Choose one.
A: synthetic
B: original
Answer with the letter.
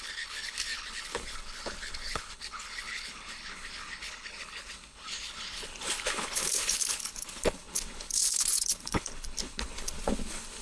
A